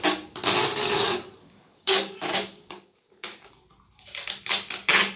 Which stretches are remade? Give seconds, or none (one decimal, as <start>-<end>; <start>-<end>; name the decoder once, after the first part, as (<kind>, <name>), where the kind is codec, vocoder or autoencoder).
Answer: 0.8-3.5 (codec, DAC)